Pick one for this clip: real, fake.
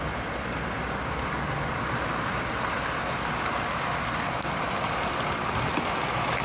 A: real